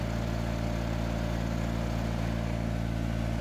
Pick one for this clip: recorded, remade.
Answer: recorded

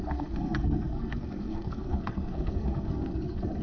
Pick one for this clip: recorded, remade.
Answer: remade